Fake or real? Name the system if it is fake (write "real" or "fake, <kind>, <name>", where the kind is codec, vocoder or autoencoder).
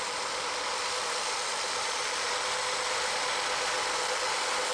real